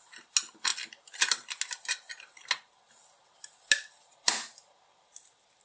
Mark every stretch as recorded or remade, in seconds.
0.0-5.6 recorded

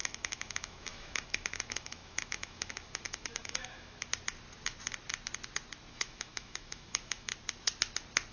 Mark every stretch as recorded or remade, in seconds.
0.0-4.1 remade; 4.1-5.9 recorded; 5.9-7.3 remade; 7.3-8.3 recorded

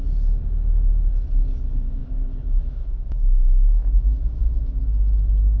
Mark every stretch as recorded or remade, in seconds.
0.0-2.0 recorded; 2.0-4.4 remade; 4.4-5.6 recorded

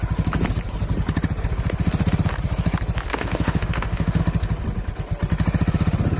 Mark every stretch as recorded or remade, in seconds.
0.0-3.1 recorded; 3.1-4.2 remade; 4.2-6.2 recorded